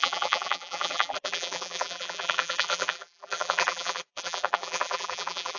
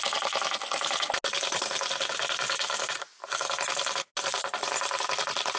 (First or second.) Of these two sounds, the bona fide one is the second